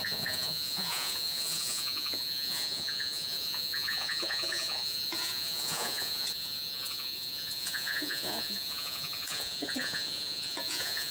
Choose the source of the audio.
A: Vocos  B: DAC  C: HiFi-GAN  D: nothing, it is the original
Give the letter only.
A